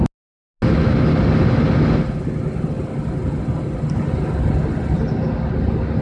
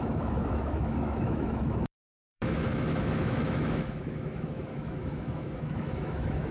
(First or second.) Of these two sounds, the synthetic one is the second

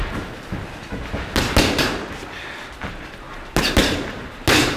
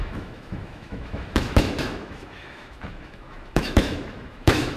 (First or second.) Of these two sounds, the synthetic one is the second